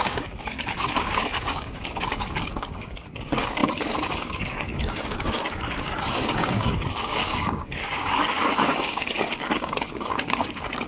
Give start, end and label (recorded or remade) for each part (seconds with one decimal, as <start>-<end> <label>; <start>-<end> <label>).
0.0-10.9 remade